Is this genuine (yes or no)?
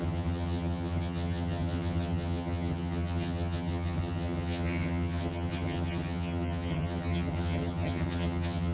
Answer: no